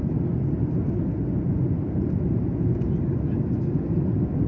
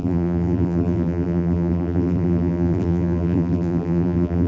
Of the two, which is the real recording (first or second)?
first